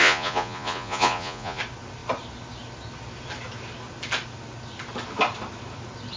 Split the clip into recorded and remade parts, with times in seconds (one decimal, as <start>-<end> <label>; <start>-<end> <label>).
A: 0.0-1.6 remade; 1.6-6.2 recorded